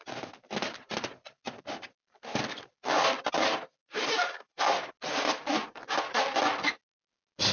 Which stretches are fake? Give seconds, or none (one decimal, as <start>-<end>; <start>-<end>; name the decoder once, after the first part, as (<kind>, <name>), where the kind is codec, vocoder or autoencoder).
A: 3.8-4.9 (vocoder, BigVGAN v2)